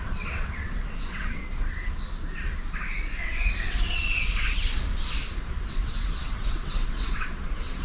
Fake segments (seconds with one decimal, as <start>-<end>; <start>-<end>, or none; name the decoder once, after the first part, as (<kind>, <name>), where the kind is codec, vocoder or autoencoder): 0.0-1.4 (vocoder, WaveNeXt); 3.2-4.9; 5.7-7.8